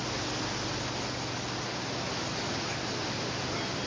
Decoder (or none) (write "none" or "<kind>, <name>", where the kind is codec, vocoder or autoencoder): none